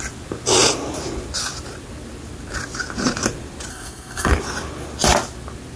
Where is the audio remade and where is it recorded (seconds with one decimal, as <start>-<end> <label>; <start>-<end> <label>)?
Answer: 0.0-3.7 recorded; 3.7-4.3 remade; 4.3-5.8 recorded